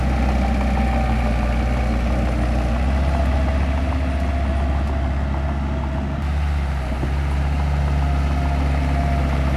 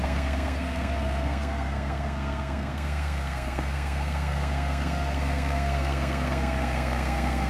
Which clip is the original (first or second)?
first